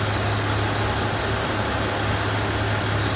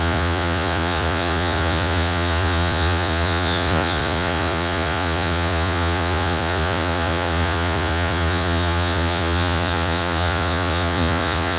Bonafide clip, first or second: first